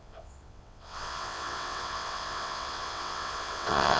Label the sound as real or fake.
fake